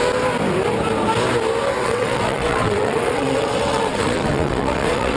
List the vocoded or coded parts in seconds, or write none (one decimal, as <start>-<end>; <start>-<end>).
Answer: 1.8-5.2

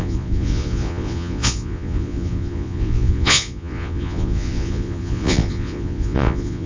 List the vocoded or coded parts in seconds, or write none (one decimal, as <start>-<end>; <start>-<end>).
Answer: 0.0-6.7

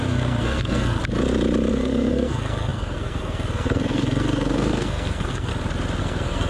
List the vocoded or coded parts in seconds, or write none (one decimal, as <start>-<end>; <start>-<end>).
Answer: 0.0-1.0; 1.7-5.5; 6.0-6.5

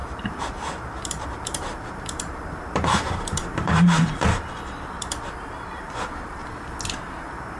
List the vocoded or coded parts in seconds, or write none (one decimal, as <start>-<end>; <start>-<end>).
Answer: 0.0-6.4; 7.1-7.6

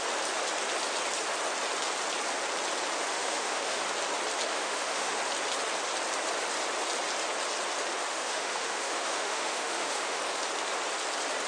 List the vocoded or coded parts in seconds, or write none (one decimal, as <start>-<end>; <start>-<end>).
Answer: 3.1-3.8; 4.5-5.2; 8.1-10.2